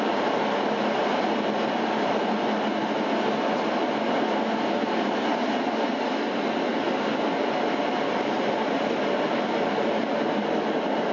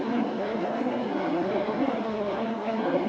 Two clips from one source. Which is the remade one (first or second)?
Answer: second